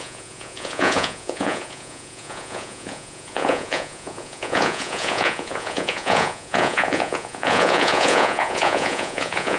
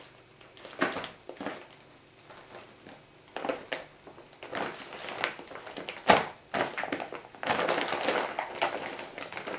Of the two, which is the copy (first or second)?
first